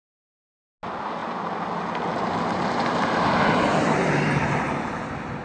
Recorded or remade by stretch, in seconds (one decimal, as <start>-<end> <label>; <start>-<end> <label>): 0.0-5.4 recorded